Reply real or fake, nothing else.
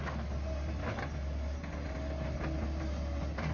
real